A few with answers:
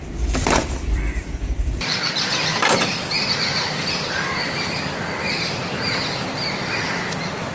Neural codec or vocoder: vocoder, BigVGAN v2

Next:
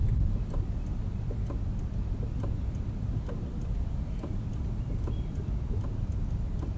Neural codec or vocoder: none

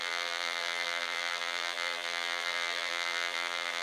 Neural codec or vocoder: vocoder, BigVGAN v2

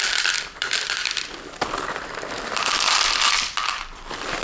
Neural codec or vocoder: vocoder, BigVGAN v2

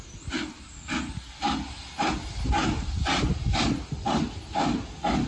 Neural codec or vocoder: none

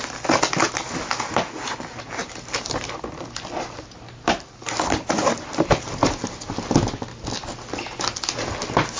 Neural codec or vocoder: none